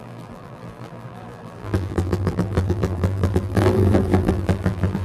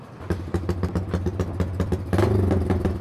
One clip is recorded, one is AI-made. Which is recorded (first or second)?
second